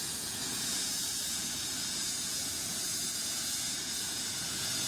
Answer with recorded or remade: remade